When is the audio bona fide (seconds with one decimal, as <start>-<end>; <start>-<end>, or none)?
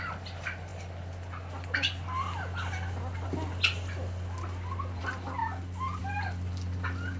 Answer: 0.7-5.0; 5.4-6.0